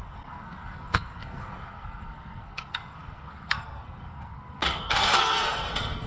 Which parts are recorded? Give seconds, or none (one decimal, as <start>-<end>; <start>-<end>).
none